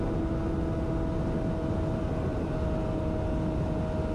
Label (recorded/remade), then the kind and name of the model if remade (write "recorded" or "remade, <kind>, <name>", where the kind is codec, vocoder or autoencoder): recorded